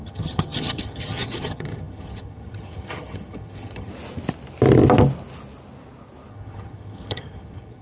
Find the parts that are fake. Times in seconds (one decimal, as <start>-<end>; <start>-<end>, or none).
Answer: 0.0-3.9; 6.3-7.8